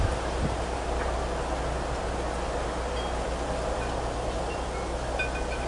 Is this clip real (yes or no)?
yes